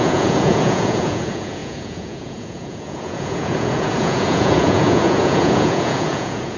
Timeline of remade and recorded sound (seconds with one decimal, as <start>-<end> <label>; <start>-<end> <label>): 0.0-6.6 remade